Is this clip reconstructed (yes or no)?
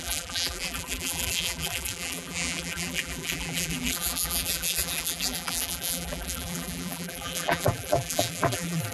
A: yes